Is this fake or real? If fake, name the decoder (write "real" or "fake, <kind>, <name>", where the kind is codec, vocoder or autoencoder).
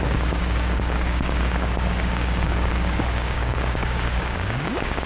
fake, codec, DAC